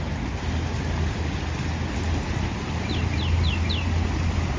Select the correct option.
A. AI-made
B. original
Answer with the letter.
B